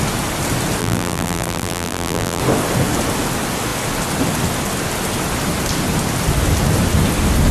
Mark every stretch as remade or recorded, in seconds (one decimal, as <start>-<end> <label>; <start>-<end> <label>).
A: 0.0-0.8 recorded; 0.8-2.4 remade; 2.4-7.5 recorded